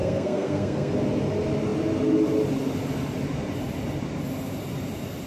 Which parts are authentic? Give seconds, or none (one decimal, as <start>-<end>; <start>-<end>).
0.9-5.3